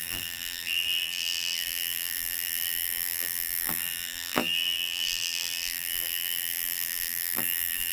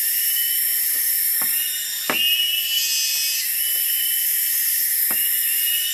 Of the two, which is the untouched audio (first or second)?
second